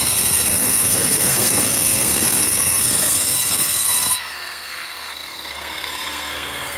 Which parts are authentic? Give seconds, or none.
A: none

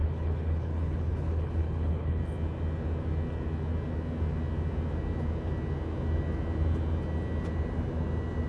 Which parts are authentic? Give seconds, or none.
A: 2.2-8.5